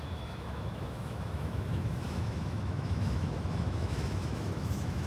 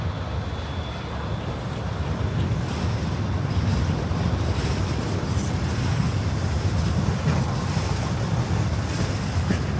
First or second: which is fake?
first